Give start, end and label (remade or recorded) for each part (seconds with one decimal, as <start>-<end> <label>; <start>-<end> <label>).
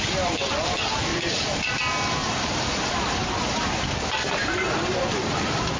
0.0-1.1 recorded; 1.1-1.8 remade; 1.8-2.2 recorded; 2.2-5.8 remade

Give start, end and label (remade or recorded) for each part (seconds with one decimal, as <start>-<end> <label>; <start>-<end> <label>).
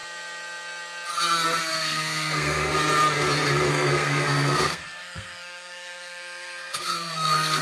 0.0-1.7 recorded; 1.7-2.7 remade; 2.7-3.7 recorded; 3.7-7.6 remade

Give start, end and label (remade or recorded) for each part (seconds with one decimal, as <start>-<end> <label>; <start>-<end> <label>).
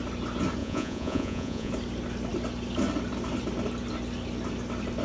0.0-0.6 recorded; 0.6-1.7 remade; 1.7-5.0 recorded